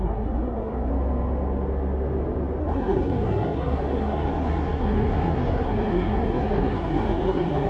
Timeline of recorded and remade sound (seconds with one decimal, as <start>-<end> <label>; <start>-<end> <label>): 0.0-0.9 remade; 0.9-2.6 recorded; 2.6-7.7 remade

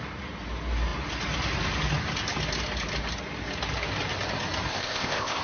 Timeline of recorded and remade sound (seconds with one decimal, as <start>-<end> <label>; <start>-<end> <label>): 0.0-4.7 recorded; 4.7-5.4 remade